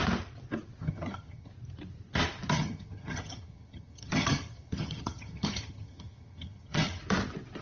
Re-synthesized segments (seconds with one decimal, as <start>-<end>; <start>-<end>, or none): 0.8-1.5; 2.5-7.0